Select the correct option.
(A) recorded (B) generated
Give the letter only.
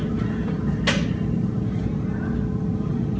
A